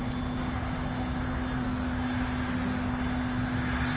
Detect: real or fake real